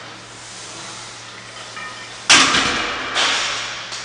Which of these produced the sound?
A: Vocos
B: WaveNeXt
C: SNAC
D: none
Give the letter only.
D